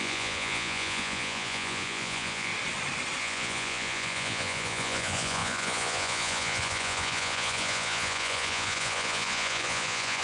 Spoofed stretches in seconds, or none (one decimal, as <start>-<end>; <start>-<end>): 0.0-2.5; 3.2-10.2